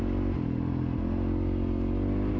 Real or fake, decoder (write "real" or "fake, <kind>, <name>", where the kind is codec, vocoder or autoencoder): real